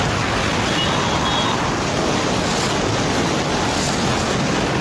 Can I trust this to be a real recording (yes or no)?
yes